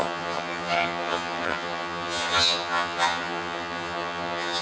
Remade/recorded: remade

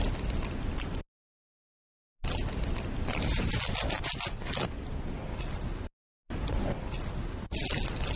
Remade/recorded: recorded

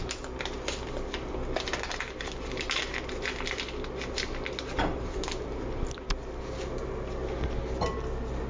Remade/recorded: recorded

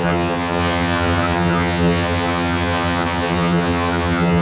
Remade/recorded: remade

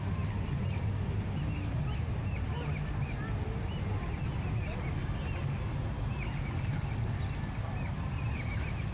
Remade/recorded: recorded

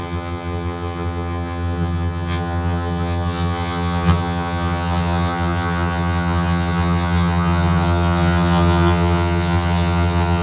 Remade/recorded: remade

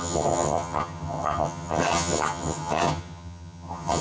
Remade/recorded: remade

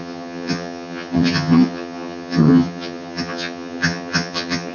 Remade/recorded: remade